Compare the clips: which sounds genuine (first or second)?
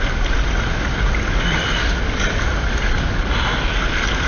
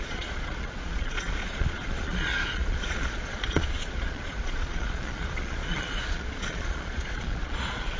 first